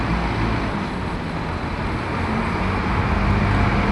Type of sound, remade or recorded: recorded